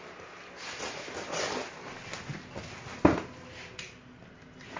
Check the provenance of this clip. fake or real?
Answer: real